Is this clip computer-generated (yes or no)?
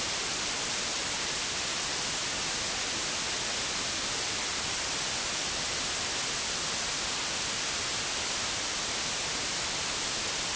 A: no